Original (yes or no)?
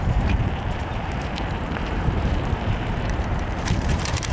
no